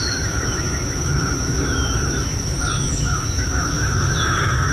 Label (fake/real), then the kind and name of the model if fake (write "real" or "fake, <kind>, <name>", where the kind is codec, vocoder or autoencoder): fake, autoencoder, DAC-VAE